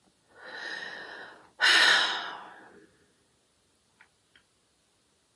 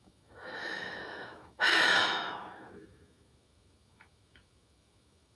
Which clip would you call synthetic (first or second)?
second